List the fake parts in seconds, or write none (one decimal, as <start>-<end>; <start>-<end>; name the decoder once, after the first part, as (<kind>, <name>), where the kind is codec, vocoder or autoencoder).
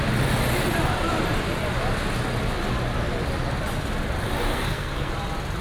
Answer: 4.5-5.1 (codec, SNAC)